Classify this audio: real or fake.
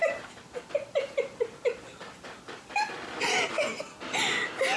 real